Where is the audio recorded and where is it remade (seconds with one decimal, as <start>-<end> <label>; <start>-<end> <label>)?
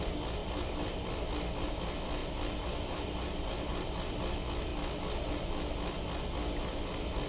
0.0-2.2 recorded; 2.2-4.0 remade; 4.0-7.3 recorded